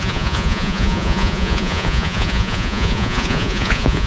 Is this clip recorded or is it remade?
remade